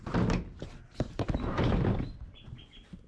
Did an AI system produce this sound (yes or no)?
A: no